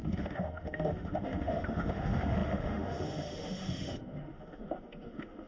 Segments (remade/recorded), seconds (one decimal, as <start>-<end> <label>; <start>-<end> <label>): 0.0-5.5 remade